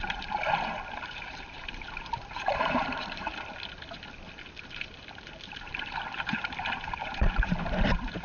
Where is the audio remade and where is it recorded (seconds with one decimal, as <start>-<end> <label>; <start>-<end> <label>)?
0.0-3.3 remade; 3.3-4.7 recorded; 4.7-8.2 remade